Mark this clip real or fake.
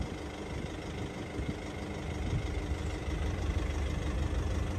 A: real